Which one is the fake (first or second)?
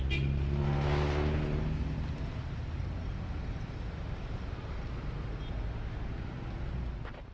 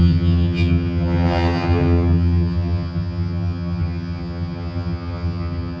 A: second